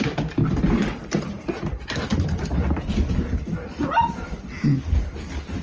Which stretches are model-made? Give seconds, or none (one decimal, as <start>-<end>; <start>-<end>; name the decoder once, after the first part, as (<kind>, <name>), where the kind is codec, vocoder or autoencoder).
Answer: 0.0-2.1 (vocoder, BigVGAN v2)